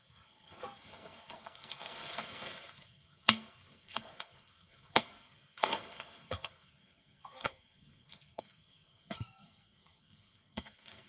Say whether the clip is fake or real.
fake